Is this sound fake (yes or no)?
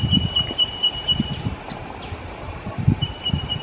no